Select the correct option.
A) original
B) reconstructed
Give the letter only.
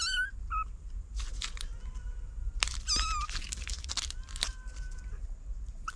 A